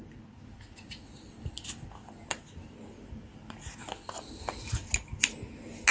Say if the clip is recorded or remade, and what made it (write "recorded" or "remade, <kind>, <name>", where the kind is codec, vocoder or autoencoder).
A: recorded